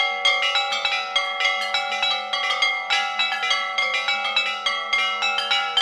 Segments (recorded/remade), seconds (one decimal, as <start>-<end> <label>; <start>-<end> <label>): 0.0-5.8 recorded